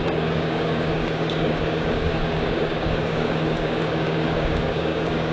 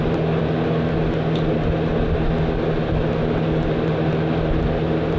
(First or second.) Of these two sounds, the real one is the second